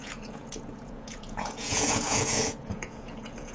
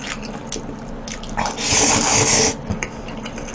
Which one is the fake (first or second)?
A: first